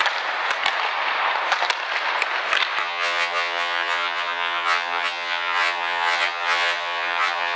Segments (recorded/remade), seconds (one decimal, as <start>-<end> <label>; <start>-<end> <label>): 0.0-2.8 recorded; 2.8-7.6 remade